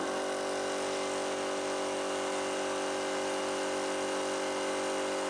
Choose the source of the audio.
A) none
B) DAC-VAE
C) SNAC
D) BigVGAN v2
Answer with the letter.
A